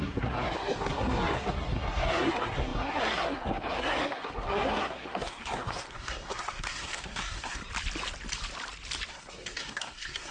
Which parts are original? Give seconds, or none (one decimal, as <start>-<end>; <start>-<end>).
7.6-9.1